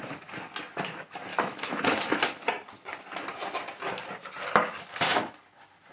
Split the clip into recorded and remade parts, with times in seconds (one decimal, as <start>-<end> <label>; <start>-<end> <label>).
0.0-1.3 recorded; 1.3-2.2 remade; 2.2-5.9 recorded